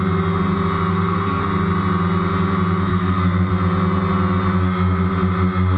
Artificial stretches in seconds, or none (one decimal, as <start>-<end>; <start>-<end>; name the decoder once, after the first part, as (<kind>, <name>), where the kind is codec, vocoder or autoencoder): 0.9-1.4 (codec, SNAC); 2.9-3.5